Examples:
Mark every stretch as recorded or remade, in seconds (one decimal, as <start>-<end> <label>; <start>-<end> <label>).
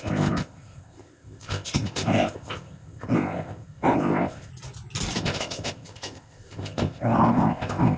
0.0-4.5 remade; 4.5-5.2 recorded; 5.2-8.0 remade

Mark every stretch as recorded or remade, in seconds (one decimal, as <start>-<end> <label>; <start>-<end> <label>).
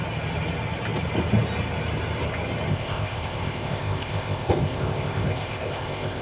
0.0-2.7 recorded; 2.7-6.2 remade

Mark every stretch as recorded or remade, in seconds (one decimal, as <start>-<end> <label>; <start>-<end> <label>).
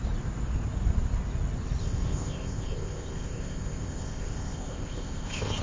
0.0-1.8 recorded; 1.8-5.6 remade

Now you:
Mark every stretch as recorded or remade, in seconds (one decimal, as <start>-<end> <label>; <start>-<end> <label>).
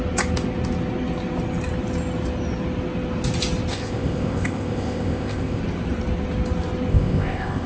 0.0-3.7 recorded; 3.7-5.6 remade; 5.6-6.9 recorded; 6.9-7.7 remade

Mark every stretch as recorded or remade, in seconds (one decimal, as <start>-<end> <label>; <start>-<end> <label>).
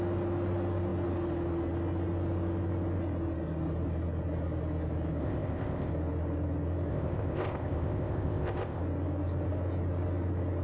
0.0-5.2 recorded; 5.2-5.9 remade; 5.9-6.9 recorded; 6.9-8.8 remade; 8.8-10.6 recorded